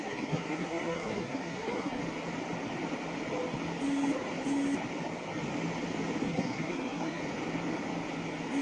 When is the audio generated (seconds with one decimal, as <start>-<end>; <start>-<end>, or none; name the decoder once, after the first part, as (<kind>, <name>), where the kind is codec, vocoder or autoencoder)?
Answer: 0.0-2.0 (codec, SNAC); 6.2-7.2